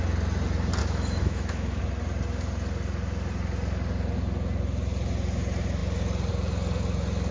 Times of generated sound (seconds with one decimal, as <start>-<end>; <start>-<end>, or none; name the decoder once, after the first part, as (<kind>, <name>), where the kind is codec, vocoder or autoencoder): 0.8-1.8 (autoencoder, DAC-VAE)